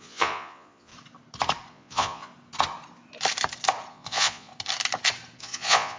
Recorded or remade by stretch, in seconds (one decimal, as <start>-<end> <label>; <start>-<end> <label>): 0.0-0.9 remade; 0.9-1.7 recorded; 1.7-2.3 remade; 2.3-3.9 recorded; 3.9-4.5 remade; 4.5-5.4 recorded; 5.4-6.0 remade